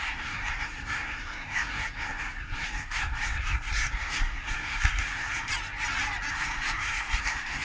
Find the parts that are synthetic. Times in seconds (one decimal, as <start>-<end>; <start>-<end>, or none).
0.0-5.5; 6.3-7.6